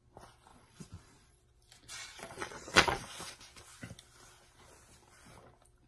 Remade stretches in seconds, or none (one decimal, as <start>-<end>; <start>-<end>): 0.5-1.4; 2.0-3.0